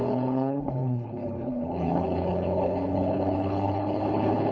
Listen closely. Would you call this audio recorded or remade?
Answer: remade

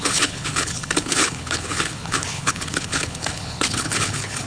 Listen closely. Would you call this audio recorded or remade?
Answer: remade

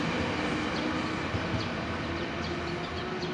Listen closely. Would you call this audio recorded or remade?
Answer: recorded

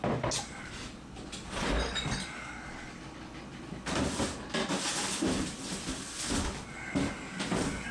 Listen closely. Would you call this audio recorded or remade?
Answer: recorded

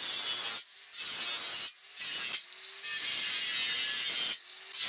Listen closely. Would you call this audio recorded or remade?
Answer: recorded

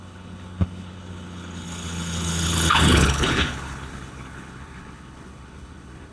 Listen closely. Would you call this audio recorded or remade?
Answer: remade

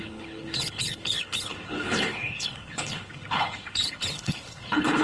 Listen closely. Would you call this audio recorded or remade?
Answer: remade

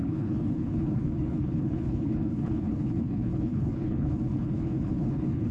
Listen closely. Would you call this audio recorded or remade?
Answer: remade